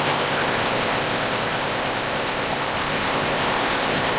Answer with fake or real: fake